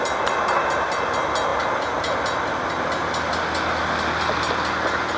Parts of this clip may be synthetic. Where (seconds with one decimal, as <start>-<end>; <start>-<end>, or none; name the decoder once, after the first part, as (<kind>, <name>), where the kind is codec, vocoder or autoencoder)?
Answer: none